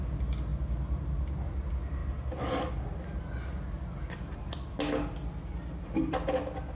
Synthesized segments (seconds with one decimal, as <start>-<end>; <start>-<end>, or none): none